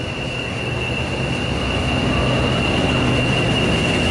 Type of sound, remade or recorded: recorded